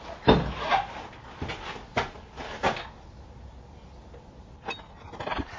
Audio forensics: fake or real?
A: real